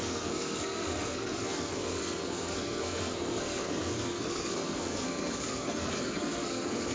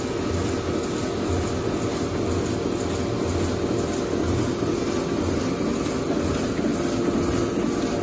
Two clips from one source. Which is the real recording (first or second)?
second